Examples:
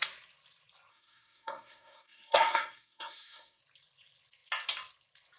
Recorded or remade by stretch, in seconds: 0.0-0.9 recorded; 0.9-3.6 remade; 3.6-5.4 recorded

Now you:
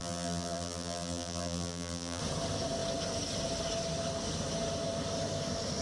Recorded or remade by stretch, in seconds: 0.0-2.2 remade; 2.2-5.8 recorded

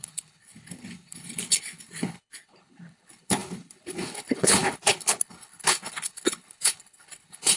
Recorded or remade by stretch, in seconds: 0.0-7.6 remade

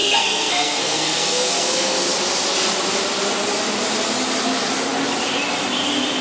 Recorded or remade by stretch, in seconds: 0.0-2.0 remade; 2.0-6.2 recorded

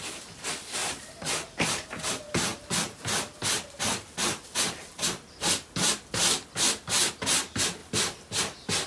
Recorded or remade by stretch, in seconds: 0.0-0.8 recorded; 0.8-1.9 remade; 1.9-8.9 recorded

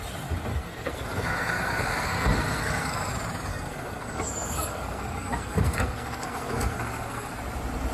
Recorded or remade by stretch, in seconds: 0.0-0.5 recorded; 0.5-3.1 remade; 3.1-3.5 recorded; 3.5-7.3 remade; 7.3-7.9 recorded

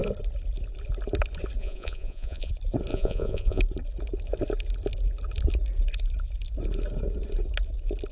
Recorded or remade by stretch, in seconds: 0.0-1.6 recorded; 1.6-2.5 remade; 2.5-2.9 recorded; 2.9-3.6 remade; 3.6-8.1 recorded